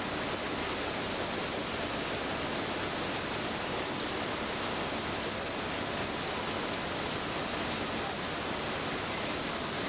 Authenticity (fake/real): real